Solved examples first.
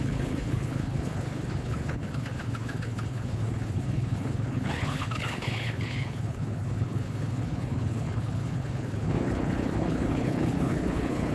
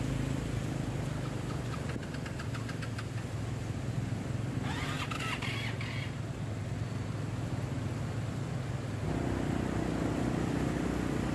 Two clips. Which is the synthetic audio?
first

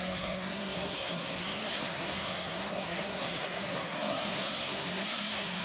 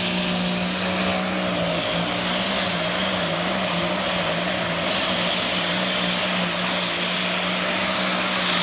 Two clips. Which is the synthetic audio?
first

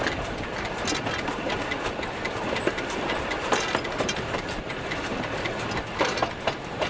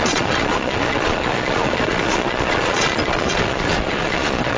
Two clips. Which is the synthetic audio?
second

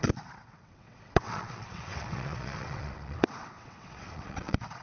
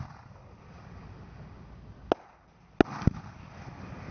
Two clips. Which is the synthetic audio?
first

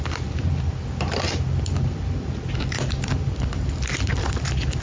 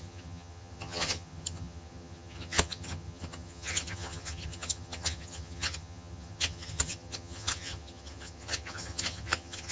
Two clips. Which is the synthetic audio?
second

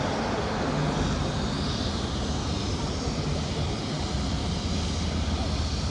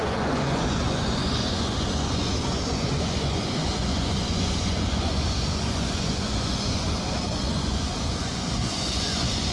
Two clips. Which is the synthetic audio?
second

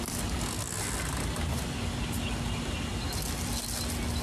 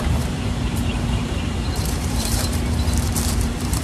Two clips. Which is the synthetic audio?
second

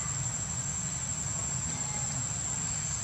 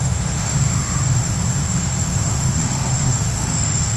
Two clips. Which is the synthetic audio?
second